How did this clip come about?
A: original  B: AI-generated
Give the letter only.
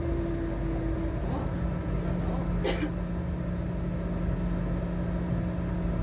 A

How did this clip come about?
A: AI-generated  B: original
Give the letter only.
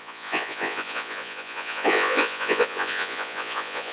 A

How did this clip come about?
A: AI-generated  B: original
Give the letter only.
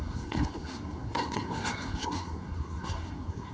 A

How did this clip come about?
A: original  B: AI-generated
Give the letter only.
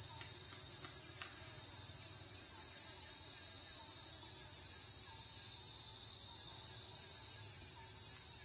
A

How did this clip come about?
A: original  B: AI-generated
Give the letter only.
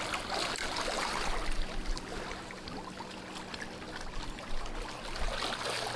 A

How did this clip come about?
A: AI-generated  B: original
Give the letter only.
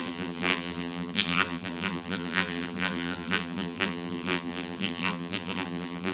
A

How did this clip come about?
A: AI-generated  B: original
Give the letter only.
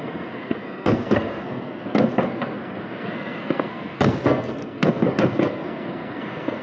A